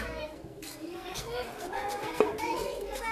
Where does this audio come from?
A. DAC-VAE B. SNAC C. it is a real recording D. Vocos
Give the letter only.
B